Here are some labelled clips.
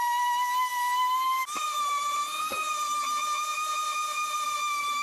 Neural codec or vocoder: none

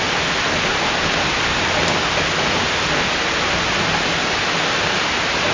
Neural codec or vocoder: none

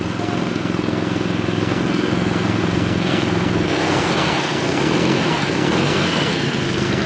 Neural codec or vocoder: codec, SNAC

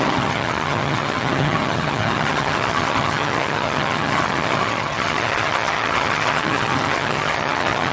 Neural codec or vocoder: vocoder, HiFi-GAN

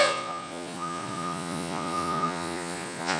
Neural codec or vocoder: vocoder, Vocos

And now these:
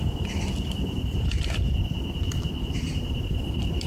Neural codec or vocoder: vocoder, BigVGAN v2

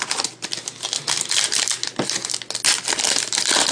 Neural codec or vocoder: none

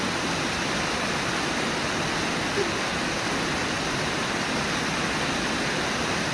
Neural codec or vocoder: none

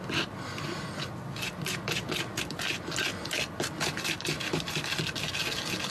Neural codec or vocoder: none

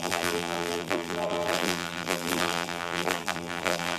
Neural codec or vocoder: vocoder, BigVGAN v2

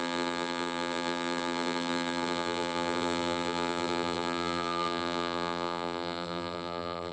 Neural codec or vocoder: vocoder, BigVGAN v2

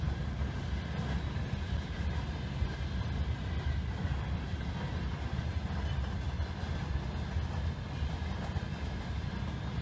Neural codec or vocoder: none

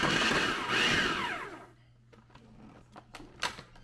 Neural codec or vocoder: none